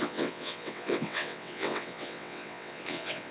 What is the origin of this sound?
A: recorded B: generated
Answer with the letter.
B